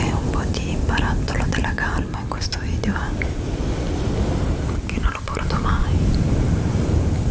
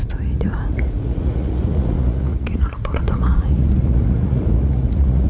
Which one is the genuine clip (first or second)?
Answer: first